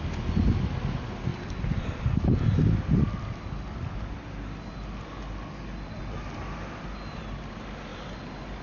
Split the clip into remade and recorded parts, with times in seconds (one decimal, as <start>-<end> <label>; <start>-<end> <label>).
0.0-8.6 recorded